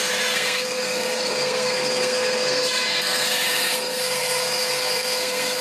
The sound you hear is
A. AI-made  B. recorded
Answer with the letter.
A